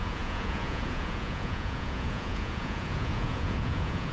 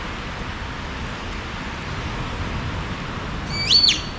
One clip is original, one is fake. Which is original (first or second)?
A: second